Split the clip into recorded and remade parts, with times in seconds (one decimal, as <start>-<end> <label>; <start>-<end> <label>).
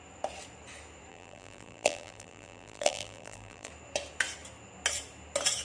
0.0-1.1 recorded; 1.1-3.7 remade; 3.7-5.6 recorded